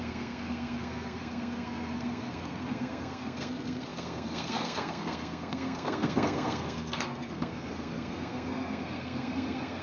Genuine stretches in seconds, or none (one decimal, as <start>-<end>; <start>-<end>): none